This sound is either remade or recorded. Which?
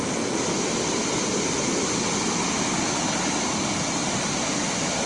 recorded